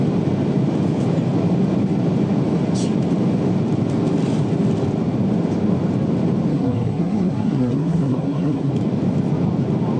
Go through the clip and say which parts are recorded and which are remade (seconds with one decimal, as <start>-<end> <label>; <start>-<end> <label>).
0.0-6.5 recorded; 6.5-8.7 remade; 8.7-10.0 recorded